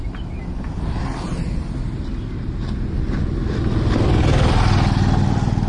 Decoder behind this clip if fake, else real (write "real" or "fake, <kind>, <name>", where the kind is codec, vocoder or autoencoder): real